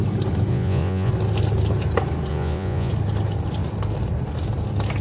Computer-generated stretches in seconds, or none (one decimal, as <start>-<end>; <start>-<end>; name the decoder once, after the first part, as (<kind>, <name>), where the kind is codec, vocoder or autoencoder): 0.5-1.1 (vocoder, Vocos); 2.3-2.9